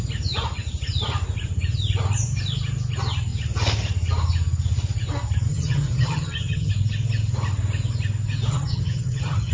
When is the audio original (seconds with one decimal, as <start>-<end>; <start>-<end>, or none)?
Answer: 0.0-5.5; 6.7-8.5